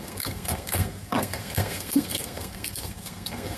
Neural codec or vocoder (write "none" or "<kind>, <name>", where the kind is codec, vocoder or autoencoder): codec, SNAC